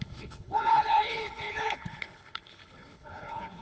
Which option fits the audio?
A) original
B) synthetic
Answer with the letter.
B